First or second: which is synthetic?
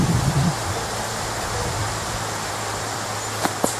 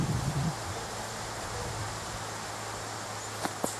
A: first